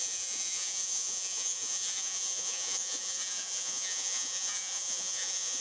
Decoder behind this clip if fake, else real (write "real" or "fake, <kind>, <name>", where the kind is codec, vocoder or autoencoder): fake, vocoder, Vocos